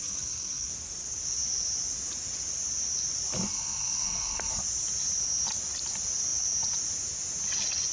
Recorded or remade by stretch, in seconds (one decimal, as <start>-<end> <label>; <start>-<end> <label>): 0.0-0.7 remade; 0.7-3.5 recorded; 3.5-4.5 remade; 4.5-7.9 recorded